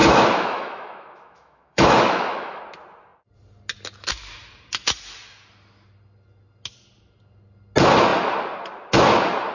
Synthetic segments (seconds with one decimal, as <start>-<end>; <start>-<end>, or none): 0.0-2.6